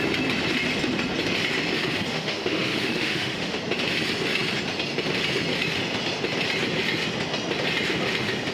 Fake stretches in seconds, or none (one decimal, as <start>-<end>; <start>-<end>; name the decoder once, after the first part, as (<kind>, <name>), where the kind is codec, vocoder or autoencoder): 2.1-3.6 (autoencoder, DAC-VAE)